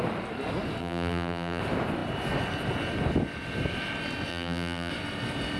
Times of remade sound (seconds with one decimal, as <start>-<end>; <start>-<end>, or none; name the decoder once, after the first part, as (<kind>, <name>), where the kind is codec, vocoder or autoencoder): 0.8-1.6 (vocoder, BigVGAN v2); 4.3-4.9